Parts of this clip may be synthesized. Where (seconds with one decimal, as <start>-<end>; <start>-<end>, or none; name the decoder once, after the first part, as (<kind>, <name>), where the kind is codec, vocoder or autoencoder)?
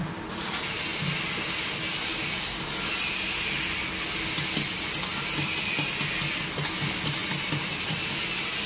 none